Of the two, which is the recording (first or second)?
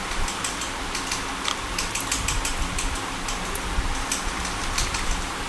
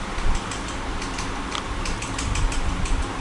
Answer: first